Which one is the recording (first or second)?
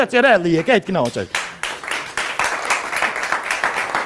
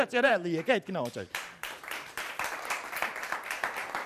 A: first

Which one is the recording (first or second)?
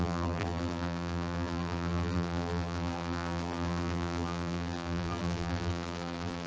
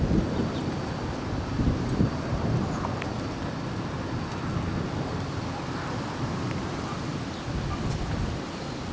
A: second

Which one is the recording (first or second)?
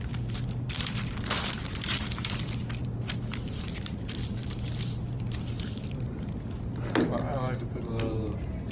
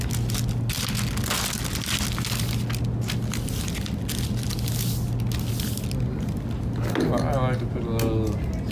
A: second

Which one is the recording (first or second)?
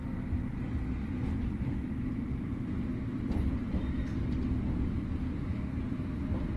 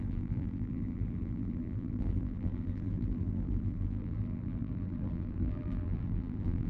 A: first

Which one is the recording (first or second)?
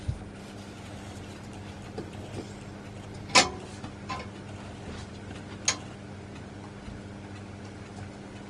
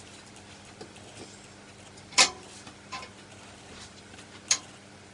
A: first